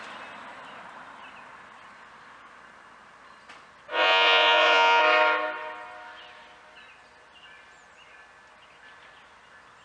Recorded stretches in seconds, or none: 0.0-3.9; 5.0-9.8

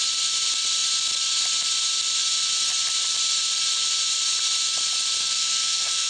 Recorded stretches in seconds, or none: 0.0-5.2

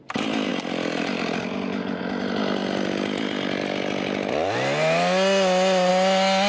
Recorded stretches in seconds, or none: 0.0-6.5

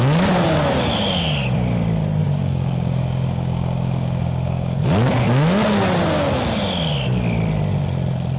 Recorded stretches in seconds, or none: 0.0-2.2; 4.8-8.4

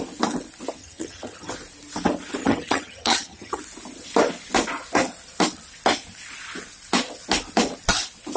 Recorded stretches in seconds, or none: 0.0-0.8; 1.5-2.4; 3.6-8.4

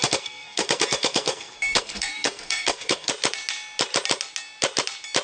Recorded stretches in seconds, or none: 3.1-5.2

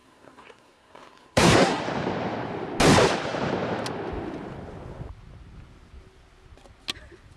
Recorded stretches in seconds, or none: 1.8-7.4

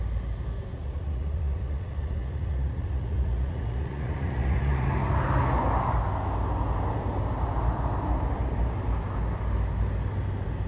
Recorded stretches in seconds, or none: 0.0-0.7; 4.9-10.7